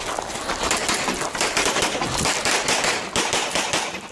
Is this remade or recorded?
recorded